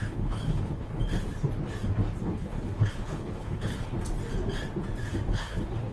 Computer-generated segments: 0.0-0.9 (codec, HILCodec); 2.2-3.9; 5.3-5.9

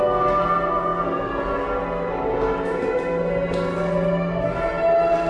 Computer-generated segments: none

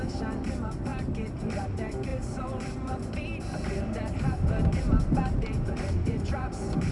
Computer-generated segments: none

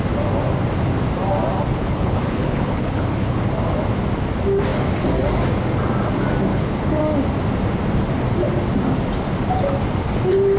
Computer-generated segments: 1.7-3.4 (codec, HILCodec); 6.5-7.0

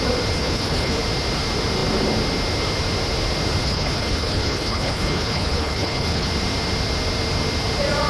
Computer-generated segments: 0.4-1.0 (codec, HILCodec); 3.6-6.3

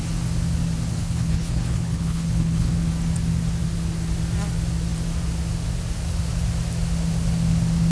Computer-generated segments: 0.9-2.7 (codec, HILCodec)

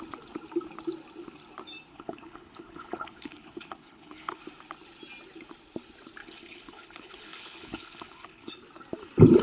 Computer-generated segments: 1.9-4.4 (codec, HILCodec); 6.2-8.5

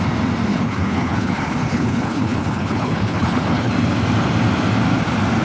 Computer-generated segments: 0.5-3.7 (codec, HILCodec)